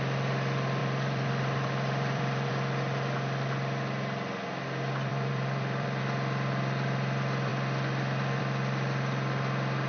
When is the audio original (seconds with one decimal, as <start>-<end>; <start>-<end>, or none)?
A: 0.0-0.8; 2.5-5.1; 6.0-9.9